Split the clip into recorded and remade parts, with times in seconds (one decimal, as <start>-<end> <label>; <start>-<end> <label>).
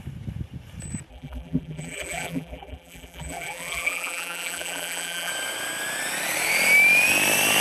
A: 0.0-1.1 recorded; 1.1-5.3 remade; 5.3-7.6 recorded